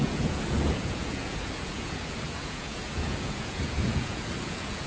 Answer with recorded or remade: remade